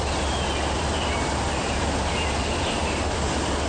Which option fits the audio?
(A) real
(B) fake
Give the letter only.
B